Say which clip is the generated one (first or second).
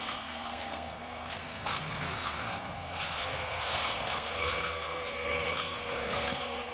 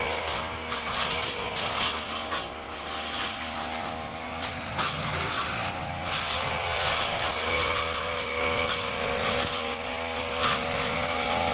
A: first